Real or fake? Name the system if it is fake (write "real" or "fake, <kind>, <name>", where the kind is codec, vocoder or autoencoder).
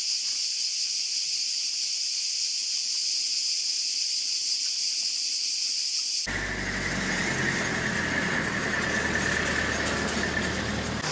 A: real